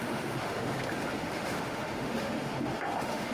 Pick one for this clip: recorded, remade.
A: remade